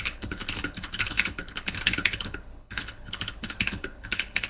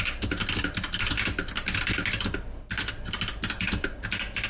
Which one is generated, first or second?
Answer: first